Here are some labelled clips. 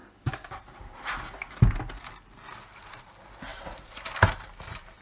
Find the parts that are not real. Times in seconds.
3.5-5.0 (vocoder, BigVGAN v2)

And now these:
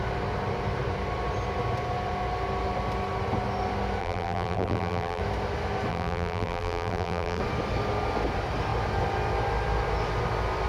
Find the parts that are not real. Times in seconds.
4.0-5.2 (vocoder, BigVGAN v2); 5.9-7.4

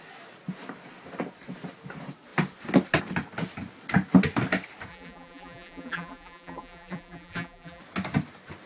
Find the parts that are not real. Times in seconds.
4.9-7.8 (vocoder, BigVGAN v2)

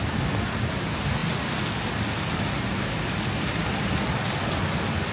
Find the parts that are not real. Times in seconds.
none

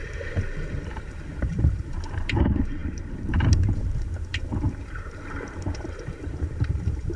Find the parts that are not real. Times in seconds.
0.0-7.2 (vocoder, BigVGAN v2)

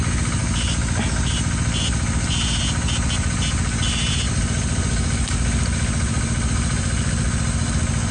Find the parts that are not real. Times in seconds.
none